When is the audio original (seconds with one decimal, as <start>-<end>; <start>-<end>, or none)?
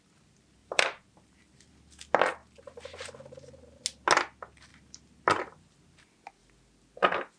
0.0-0.6; 1.7-2.4; 3.2-7.4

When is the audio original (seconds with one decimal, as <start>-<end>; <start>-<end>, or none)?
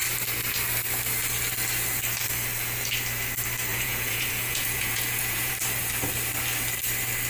0.0-3.7; 5.5-7.3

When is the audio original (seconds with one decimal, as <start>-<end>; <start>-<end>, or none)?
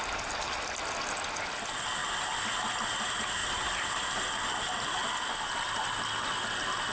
0.0-6.9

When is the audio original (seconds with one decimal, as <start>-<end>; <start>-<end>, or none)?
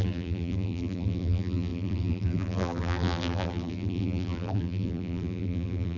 none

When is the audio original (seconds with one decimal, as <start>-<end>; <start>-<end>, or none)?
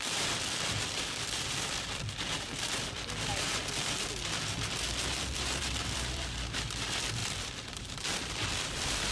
3.6-5.2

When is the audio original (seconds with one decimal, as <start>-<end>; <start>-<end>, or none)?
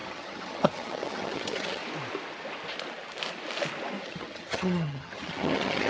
1.8-4.0